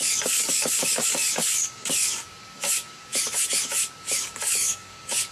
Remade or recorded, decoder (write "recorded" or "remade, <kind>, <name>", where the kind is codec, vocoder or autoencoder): remade, codec, DAC